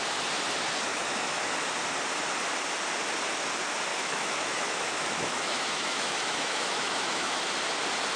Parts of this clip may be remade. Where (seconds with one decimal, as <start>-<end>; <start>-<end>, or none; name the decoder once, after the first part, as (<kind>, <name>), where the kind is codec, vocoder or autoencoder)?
0.9-1.5 (autoencoder, DAC-VAE); 3.9-7.4